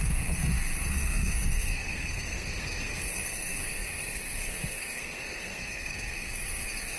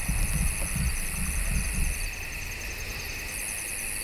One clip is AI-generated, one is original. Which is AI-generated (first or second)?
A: first